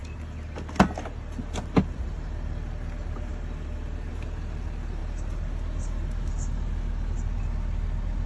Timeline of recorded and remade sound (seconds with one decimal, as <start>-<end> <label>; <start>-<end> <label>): 0.0-3.3 recorded; 3.3-4.1 remade; 4.1-8.3 recorded